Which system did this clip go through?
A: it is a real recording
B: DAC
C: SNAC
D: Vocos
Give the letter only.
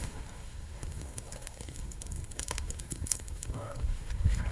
C